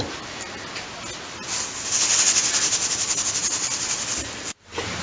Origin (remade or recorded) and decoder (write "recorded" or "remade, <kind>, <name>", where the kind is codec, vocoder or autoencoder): recorded